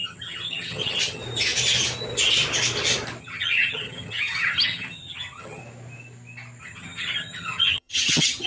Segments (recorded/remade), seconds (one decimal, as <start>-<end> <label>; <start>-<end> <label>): 0.0-1.2 remade; 1.2-3.2 recorded; 3.2-5.6 remade; 5.6-6.6 recorded; 6.6-8.5 remade